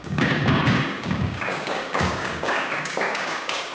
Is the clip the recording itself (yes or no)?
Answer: no